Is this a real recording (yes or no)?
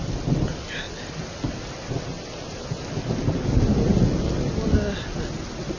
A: yes